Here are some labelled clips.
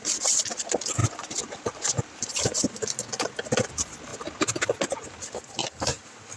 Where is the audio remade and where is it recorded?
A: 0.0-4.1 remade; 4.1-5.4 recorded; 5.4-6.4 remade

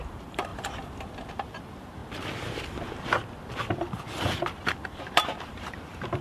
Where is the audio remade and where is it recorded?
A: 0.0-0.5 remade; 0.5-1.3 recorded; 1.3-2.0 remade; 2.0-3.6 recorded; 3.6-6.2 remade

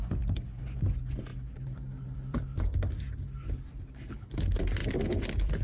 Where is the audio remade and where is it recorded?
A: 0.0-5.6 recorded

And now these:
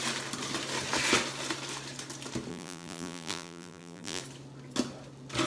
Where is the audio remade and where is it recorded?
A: 0.0-2.5 recorded; 2.5-4.2 remade; 4.2-5.5 recorded

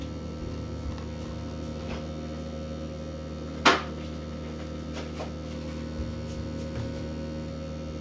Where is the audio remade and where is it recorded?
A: 0.0-8.0 recorded

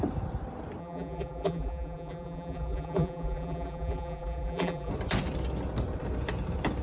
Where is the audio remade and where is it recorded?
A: 0.0-0.8 recorded; 0.8-4.9 remade; 4.9-6.8 recorded